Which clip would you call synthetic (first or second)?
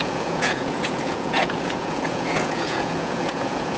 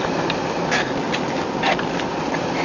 first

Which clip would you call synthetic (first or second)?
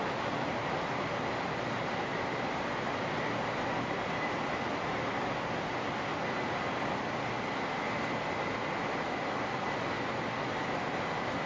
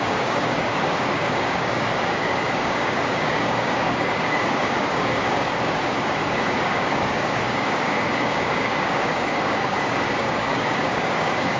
second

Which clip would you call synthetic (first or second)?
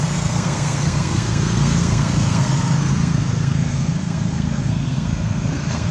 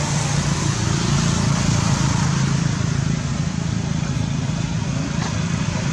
first